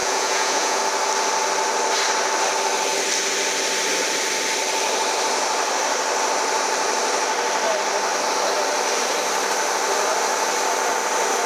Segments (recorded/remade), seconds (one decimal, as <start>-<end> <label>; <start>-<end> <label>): 0.0-0.8 remade; 0.8-11.5 recorded